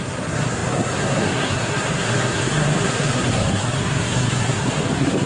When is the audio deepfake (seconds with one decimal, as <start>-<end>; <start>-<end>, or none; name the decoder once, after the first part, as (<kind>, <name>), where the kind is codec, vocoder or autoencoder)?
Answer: 0.0-5.3 (codec, SNAC)